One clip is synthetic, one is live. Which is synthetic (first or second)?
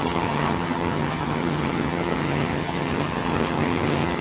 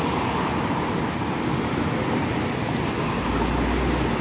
first